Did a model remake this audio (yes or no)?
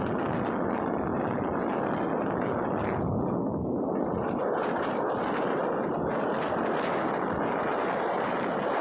no